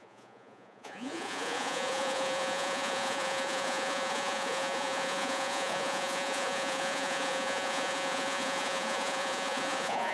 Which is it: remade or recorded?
remade